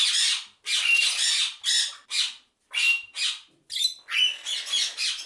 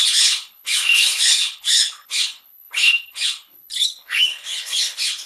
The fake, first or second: second